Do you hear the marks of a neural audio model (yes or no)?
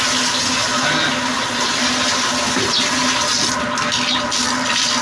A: no